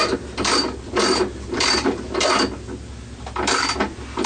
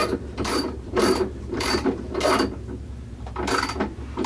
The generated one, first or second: second